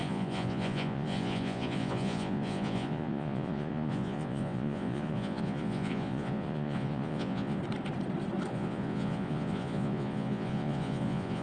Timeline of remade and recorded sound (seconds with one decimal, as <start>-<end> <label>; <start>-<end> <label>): 0.0-7.6 remade; 7.6-8.5 recorded; 8.5-11.4 remade